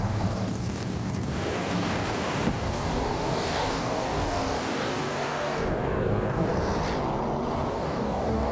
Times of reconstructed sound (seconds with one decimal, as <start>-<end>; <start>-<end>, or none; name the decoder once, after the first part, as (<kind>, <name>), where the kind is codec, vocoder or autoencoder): 0.0-6.5 (codec, DAC); 7.7-8.5